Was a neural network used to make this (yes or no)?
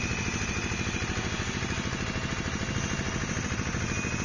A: no